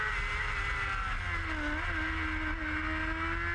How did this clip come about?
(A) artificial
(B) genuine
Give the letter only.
B